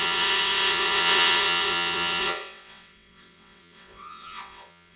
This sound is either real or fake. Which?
fake